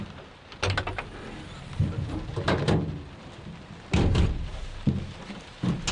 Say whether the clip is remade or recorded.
recorded